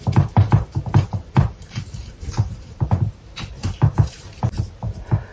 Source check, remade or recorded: remade